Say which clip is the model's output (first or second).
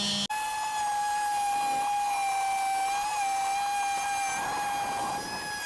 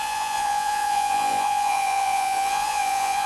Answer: second